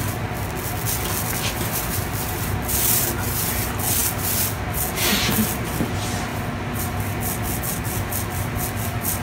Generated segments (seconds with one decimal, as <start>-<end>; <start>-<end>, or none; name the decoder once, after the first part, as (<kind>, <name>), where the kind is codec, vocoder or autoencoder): none